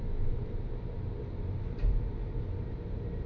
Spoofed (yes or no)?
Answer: yes